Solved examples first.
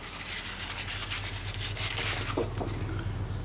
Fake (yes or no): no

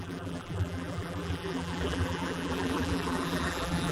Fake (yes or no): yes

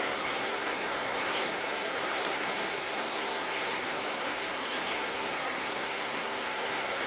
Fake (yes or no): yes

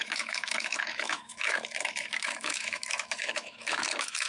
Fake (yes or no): yes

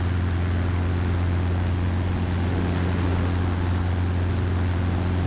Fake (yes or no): no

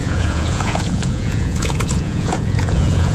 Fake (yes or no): yes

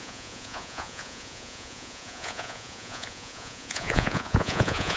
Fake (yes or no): yes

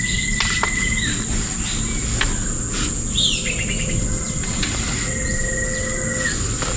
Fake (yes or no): no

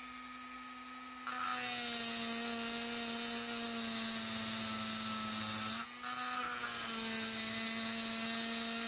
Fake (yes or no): no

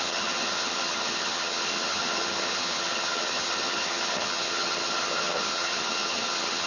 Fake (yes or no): yes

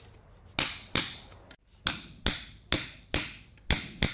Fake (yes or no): no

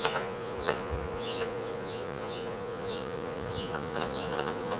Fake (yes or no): yes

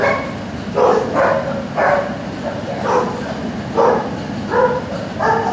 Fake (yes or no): no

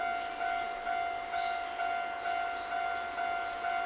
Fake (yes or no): no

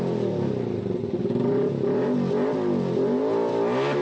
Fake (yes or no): no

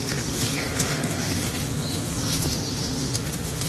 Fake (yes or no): yes